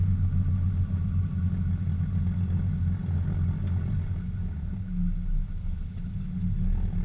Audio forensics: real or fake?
real